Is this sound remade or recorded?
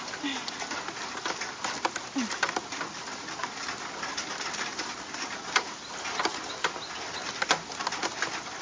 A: recorded